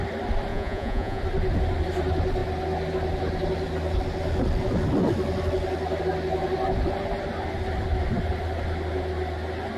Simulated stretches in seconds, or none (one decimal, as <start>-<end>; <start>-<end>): 0.5-1.2